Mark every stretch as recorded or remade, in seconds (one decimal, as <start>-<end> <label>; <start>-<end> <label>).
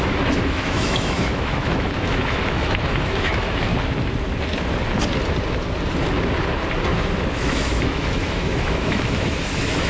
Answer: 0.0-3.7 remade; 3.7-7.3 recorded; 7.3-9.9 remade